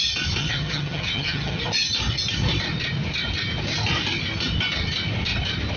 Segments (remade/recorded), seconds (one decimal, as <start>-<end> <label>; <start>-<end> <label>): 0.0-0.4 recorded; 0.4-1.6 remade; 1.6-5.8 recorded